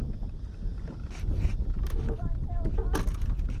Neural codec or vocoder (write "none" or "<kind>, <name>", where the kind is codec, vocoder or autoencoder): none